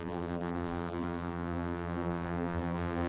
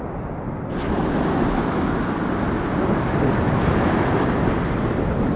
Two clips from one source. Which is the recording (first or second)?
second